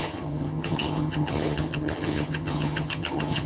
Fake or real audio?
fake